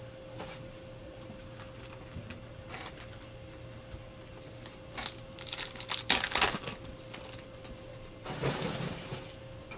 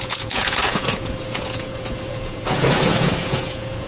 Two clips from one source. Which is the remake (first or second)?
second